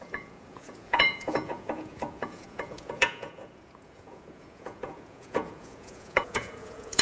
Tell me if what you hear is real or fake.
fake